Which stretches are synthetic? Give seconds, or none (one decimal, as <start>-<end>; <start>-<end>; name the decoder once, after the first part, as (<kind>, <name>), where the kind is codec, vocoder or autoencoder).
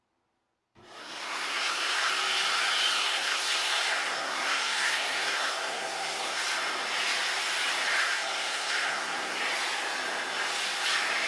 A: 1.0-2.1 (codec, SNAC); 3.0-6.4; 8.0-9.4